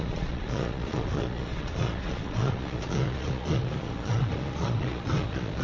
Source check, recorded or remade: remade